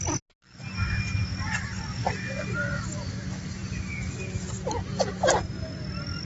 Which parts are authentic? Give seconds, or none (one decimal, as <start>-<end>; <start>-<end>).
0.0-6.2